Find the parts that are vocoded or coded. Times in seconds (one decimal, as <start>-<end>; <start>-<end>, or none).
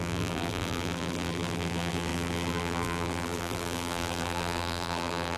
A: 0.0-5.4